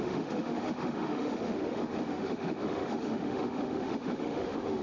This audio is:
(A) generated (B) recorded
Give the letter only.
A